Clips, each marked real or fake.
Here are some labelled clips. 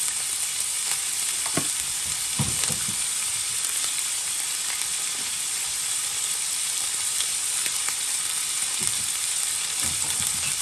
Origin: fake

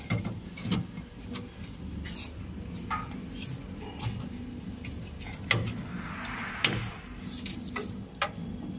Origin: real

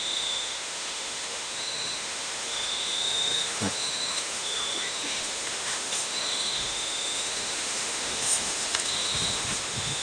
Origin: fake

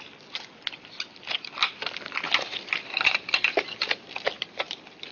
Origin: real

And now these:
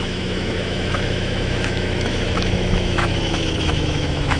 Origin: fake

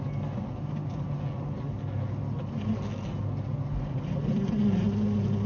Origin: real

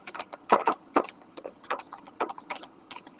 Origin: fake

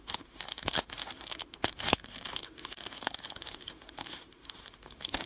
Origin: fake